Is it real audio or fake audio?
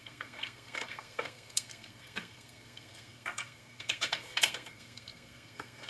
fake